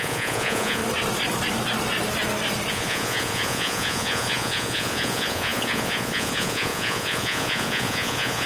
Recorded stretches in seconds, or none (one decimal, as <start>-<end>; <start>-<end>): 0.8-2.7